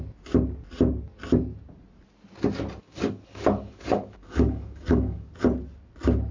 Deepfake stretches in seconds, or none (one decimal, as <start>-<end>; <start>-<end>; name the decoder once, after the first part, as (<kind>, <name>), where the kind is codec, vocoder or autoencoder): 2.8-5.3 (codec, DAC)